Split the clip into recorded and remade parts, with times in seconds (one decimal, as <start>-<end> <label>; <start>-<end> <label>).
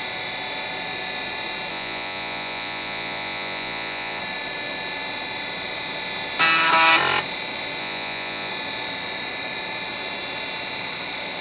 0.0-1.7 recorded; 1.7-4.2 remade; 4.2-7.8 recorded; 7.8-8.5 remade; 8.5-11.4 recorded